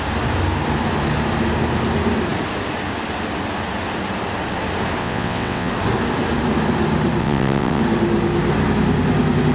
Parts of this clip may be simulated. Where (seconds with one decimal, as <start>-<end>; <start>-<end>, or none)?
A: 5.0-5.7; 7.2-7.8